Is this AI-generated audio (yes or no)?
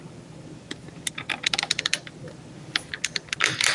no